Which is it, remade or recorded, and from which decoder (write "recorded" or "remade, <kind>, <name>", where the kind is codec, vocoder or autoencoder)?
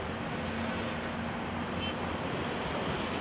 recorded